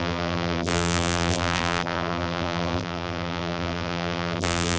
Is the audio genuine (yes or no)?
no